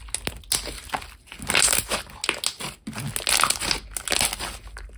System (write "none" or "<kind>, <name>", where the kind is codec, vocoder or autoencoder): none